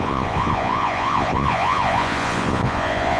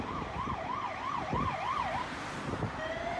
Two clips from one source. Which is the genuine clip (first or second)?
second